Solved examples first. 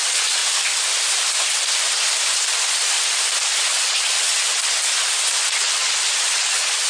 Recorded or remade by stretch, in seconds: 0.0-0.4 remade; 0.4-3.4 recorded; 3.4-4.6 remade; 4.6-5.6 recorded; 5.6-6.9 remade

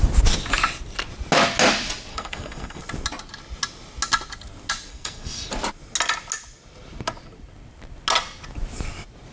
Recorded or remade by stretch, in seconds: 0.0-2.1 recorded; 2.1-2.8 remade; 2.8-4.9 recorded; 4.9-5.5 remade; 5.5-9.3 recorded